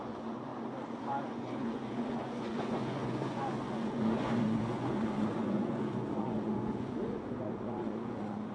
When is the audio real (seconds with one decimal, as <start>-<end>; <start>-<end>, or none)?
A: 0.5-1.2